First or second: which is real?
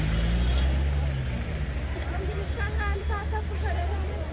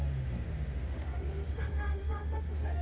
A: first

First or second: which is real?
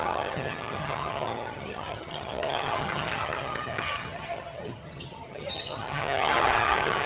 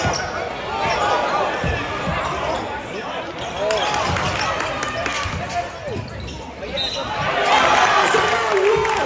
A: second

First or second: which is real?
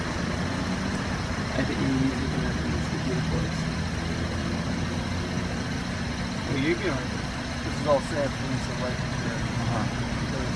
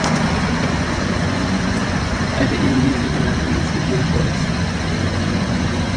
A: first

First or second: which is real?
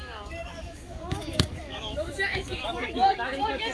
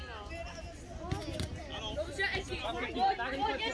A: second